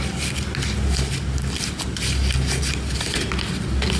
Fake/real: real